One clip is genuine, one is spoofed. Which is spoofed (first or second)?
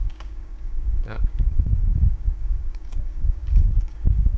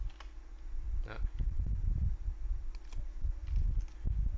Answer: first